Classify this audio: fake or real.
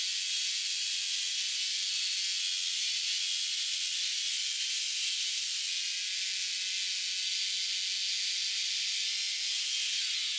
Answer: real